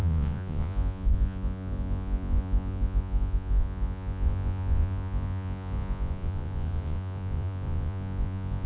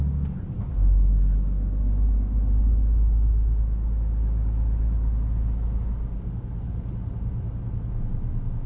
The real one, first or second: second